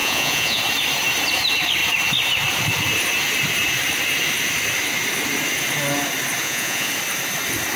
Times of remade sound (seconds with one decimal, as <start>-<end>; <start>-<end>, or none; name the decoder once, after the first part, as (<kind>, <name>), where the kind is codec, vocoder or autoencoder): 0.0-0.6 (vocoder, Vocos); 6.4-6.9